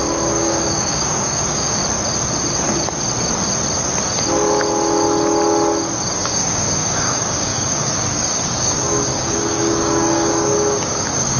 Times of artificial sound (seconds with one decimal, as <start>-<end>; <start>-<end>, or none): 0.0-1.8; 6.2-11.4